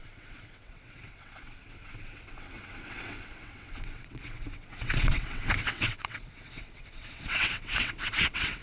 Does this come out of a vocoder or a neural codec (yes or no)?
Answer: yes